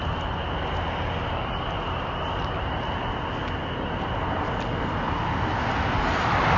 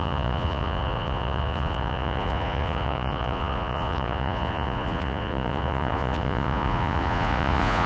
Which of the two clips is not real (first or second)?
second